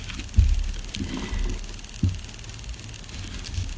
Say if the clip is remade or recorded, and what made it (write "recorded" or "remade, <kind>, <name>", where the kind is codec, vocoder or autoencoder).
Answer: recorded